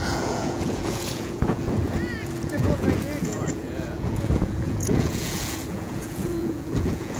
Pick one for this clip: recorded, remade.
remade